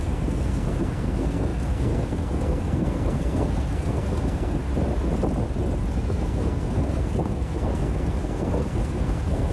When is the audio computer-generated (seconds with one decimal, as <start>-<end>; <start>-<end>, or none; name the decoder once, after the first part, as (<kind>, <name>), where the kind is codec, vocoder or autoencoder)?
0.0-4.6 (codec, SNAC); 5.9-9.5